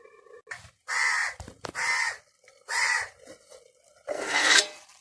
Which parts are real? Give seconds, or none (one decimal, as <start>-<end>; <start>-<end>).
0.0-4.1; 4.6-5.0